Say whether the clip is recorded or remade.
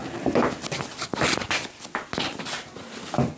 recorded